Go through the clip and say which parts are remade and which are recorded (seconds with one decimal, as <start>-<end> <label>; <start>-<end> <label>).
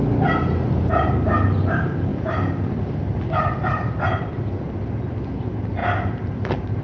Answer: 0.0-6.8 recorded